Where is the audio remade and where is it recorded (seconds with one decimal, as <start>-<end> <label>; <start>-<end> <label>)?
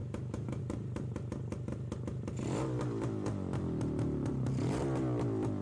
0.0-0.6 remade; 0.6-5.6 recorded